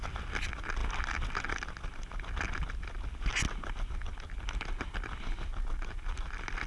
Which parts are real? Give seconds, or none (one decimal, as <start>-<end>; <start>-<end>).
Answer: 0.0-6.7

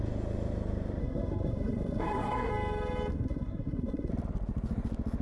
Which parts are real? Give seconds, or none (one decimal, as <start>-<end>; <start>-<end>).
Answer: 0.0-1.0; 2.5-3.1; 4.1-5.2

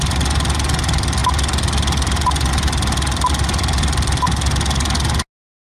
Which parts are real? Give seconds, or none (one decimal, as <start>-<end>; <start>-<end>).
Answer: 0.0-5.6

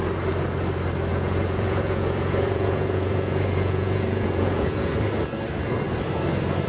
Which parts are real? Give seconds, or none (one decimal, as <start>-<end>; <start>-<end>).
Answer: 0.0-1.1; 5.0-6.7